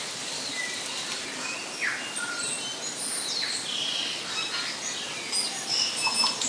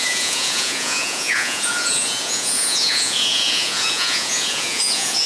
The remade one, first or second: second